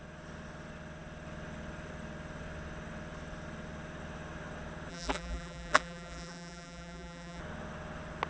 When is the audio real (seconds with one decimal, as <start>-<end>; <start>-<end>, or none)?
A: 0.0-4.9; 7.4-8.3